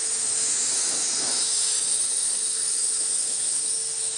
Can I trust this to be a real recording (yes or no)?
no